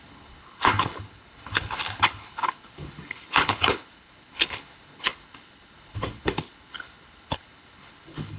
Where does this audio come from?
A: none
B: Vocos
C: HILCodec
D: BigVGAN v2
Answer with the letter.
C